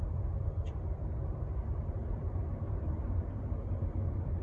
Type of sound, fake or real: fake